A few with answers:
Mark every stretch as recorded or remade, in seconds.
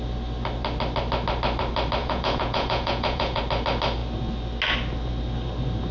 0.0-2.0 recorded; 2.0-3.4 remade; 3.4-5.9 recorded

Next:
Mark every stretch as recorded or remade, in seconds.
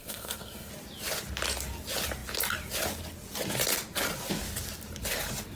0.0-0.7 remade; 0.7-5.6 recorded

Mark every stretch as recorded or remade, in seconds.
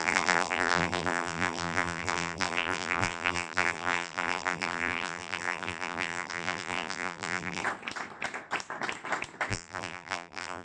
0.0-7.6 remade; 7.6-9.5 recorded; 9.5-10.6 remade